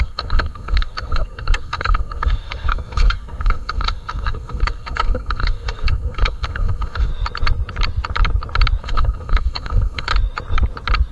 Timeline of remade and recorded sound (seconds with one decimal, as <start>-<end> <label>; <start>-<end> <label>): 0.0-7.1 remade; 7.1-8.8 recorded; 8.8-10.1 remade; 10.1-11.1 recorded